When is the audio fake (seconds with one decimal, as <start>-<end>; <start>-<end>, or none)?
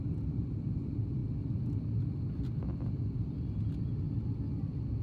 none